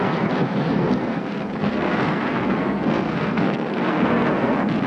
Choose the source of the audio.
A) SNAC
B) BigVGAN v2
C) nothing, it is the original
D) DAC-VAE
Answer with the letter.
A